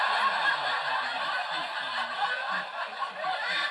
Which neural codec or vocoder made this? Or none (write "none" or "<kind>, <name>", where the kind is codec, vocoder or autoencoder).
none